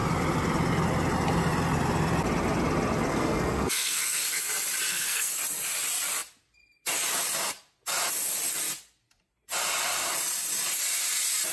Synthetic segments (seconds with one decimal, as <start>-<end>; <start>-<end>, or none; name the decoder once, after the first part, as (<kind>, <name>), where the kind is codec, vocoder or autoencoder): 3.1-4.5 (codec, SNAC); 4.9-5.4